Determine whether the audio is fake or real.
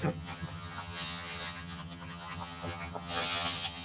fake